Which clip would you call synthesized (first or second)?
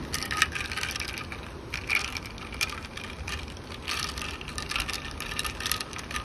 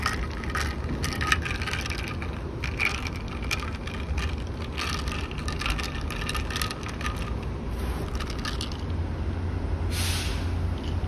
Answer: first